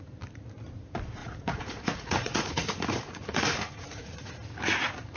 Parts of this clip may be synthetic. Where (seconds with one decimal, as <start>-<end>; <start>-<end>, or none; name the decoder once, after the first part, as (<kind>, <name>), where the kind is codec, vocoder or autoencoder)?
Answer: 1.2-4.3 (vocoder, Vocos)